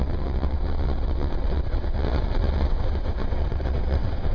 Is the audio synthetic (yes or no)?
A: yes